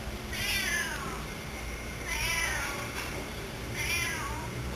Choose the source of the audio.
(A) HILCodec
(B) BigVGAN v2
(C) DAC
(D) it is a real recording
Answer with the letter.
B